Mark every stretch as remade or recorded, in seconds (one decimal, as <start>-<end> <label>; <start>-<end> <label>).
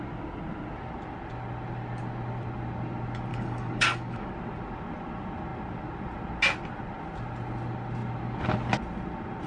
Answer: 0.0-3.3 recorded; 3.3-4.3 remade; 4.3-9.5 recorded